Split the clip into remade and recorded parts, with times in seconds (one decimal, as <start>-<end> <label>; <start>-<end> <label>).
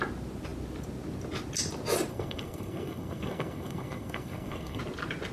0.0-2.1 recorded; 2.1-4.8 remade; 4.8-5.3 recorded